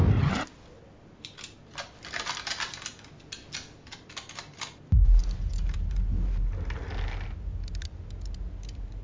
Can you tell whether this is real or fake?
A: real